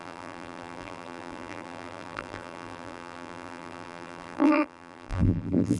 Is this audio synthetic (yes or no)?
yes